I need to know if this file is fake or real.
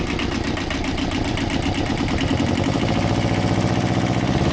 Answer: real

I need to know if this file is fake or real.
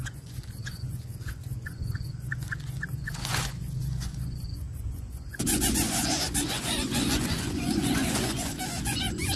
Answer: fake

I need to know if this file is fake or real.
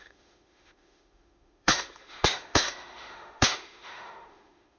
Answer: fake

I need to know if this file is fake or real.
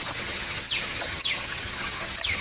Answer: fake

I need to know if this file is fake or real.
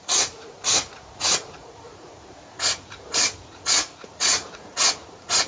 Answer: fake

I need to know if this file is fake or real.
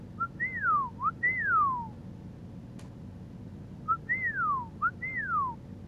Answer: real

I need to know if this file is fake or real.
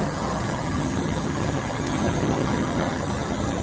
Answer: fake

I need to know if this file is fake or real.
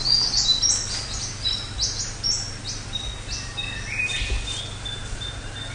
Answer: real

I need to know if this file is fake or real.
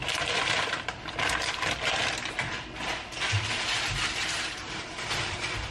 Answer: real